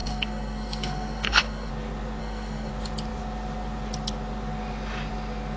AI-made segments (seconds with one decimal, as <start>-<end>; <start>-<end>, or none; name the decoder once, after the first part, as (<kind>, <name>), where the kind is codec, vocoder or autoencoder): 0.0-1.7 (codec, SNAC); 2.2-2.7